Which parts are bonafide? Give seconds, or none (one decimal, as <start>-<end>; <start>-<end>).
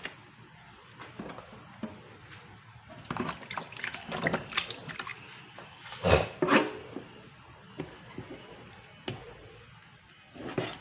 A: 0.0-10.8